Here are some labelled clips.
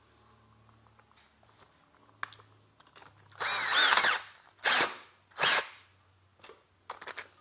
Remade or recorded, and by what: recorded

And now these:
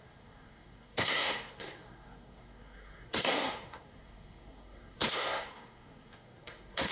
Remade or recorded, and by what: remade, codec, SNAC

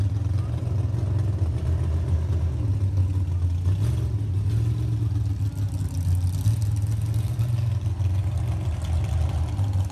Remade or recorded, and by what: recorded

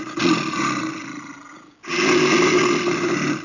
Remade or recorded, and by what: recorded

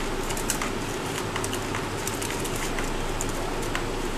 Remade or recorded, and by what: recorded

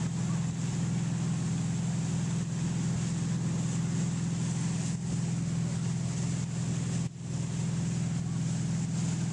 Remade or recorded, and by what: recorded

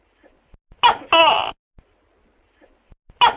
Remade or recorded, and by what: recorded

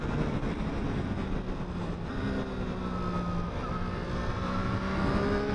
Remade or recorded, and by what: recorded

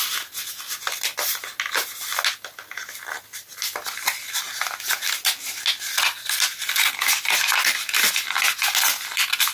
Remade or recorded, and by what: recorded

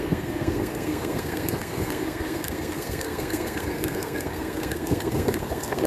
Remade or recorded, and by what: remade, codec, SNAC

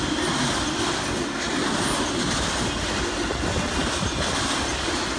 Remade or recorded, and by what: recorded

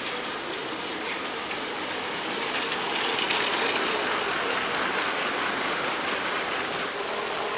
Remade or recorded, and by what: recorded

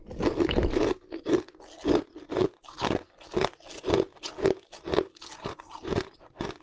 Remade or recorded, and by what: recorded